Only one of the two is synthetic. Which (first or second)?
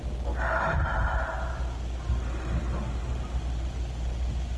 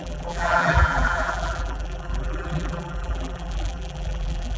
second